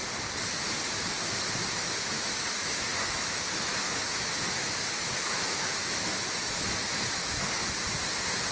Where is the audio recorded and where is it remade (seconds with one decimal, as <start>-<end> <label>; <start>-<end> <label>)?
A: 0.0-1.7 recorded; 1.7-7.6 remade; 7.6-8.5 recorded